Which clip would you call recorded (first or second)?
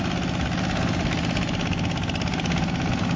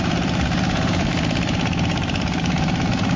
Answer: first